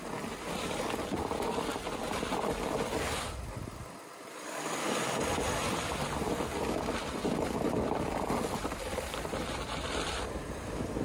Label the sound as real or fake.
fake